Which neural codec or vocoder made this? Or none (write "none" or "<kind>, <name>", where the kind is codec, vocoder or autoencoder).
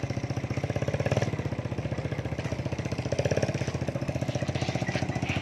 none